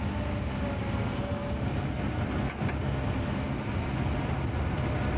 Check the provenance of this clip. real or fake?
real